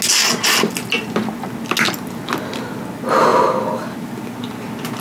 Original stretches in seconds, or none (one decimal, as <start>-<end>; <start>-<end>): 0.0-5.0